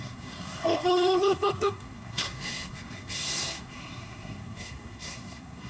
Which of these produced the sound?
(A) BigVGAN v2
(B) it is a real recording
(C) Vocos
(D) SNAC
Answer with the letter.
D